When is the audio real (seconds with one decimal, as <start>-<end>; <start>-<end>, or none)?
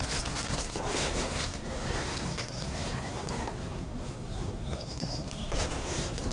none